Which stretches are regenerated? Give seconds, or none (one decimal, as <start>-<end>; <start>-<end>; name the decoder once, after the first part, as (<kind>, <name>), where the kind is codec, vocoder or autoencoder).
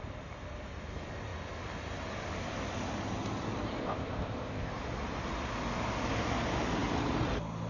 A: 3.8-4.7 (codec, ZipCodec)